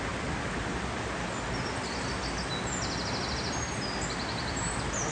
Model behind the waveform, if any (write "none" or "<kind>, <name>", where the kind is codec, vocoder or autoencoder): none